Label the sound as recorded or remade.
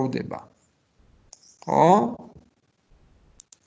recorded